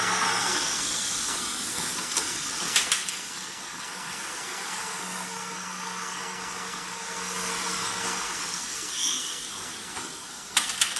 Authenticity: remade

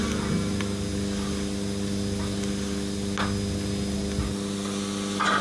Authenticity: recorded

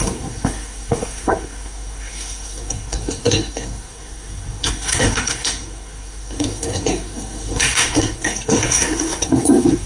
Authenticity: remade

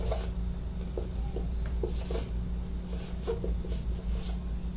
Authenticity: recorded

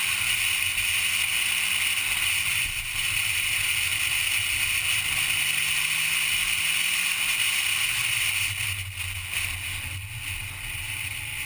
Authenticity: recorded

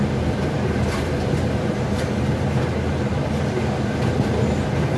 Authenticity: recorded